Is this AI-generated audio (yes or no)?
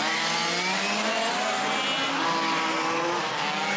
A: no